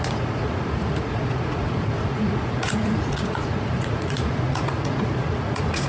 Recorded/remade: remade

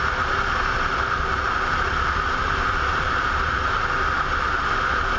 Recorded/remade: recorded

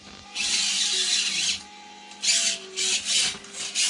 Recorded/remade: recorded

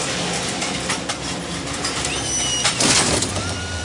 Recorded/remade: remade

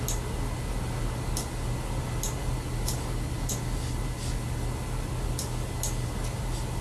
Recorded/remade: recorded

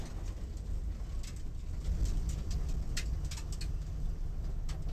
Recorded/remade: recorded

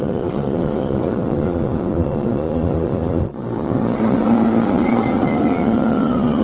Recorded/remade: remade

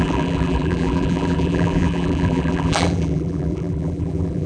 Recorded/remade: remade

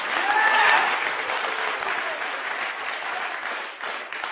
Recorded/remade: recorded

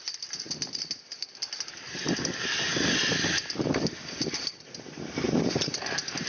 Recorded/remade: recorded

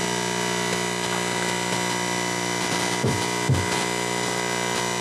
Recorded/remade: recorded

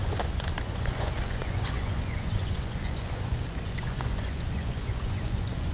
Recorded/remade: remade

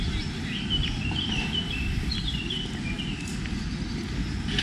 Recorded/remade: remade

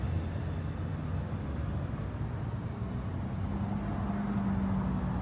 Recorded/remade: recorded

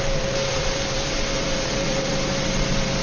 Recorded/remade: remade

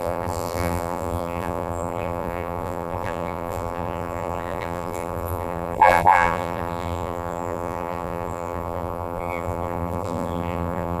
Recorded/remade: remade